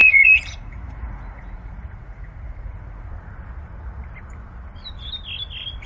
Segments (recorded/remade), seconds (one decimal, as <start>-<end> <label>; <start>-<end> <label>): 0.0-3.1 remade; 3.1-5.9 recorded